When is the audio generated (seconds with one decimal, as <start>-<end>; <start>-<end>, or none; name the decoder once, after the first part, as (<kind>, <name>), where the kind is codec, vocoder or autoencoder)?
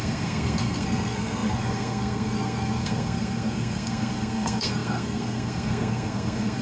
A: 0.0-6.6 (codec, SNAC)